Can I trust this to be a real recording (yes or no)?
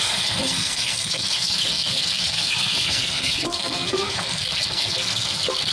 no